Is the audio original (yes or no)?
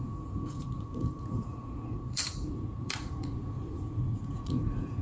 no